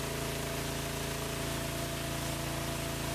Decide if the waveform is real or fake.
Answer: real